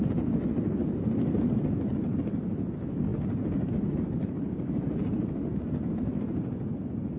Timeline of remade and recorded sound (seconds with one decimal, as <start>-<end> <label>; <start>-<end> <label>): 0.0-7.2 recorded